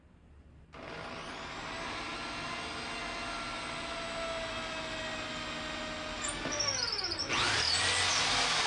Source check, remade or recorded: recorded